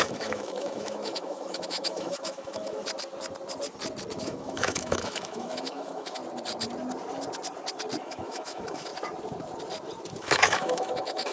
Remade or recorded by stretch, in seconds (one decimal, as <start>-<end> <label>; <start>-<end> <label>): 0.0-2.8 remade; 2.8-4.2 recorded; 4.2-6.2 remade; 6.2-8.0 recorded; 8.0-8.9 remade; 8.9-10.2 recorded; 10.2-11.3 remade

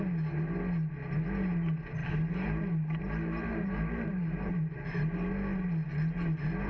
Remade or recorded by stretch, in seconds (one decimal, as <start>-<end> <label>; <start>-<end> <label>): 0.0-2.0 recorded; 2.0-5.3 remade; 5.3-6.7 recorded

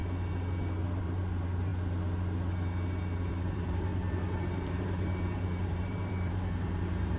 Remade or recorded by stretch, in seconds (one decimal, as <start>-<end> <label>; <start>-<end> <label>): 0.0-1.0 recorded; 1.0-1.7 remade; 1.7-3.3 recorded; 3.3-3.9 remade; 3.9-4.4 recorded; 4.4-7.2 remade

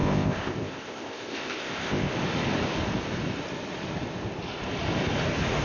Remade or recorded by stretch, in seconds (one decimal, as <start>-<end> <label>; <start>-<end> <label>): 0.0-2.1 remade; 2.1-5.6 recorded

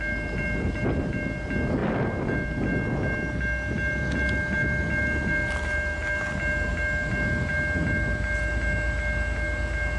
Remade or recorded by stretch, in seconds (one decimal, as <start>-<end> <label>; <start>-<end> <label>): 0.0-10.0 recorded

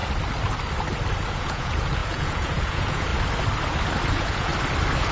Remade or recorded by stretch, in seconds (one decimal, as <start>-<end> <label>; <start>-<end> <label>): 0.0-1.3 recorded; 1.3-3.1 remade; 3.1-4.1 recorded; 4.1-4.5 remade; 4.5-5.1 recorded

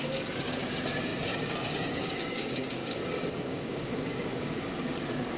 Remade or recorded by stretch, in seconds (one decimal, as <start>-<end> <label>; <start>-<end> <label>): 0.0-5.4 remade